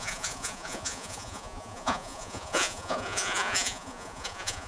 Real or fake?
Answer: fake